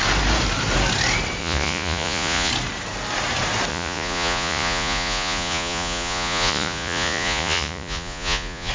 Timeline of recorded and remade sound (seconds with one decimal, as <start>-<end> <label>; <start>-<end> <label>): 0.0-1.4 recorded; 1.4-2.5 remade; 2.5-3.7 recorded; 3.7-8.7 remade